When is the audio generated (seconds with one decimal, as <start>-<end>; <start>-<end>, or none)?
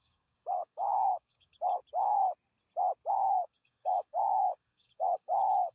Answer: 0.0-1.8; 3.1-5.7